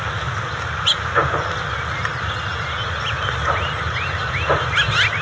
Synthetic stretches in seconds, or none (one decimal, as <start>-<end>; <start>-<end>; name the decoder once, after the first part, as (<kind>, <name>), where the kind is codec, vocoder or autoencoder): none